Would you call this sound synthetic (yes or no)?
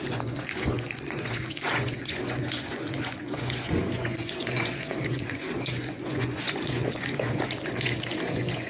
yes